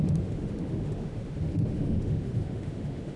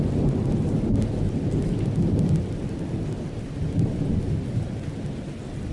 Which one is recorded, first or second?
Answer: second